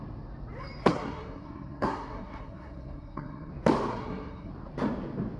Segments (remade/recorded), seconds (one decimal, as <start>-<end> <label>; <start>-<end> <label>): 0.0-0.8 recorded; 0.8-3.5 remade; 3.5-3.9 recorded; 3.9-4.5 remade; 4.5-5.4 recorded